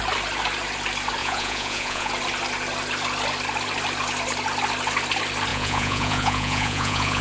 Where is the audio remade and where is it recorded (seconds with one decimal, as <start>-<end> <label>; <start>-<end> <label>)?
0.0-1.2 recorded; 1.2-2.1 remade; 2.1-5.5 recorded; 5.5-7.2 remade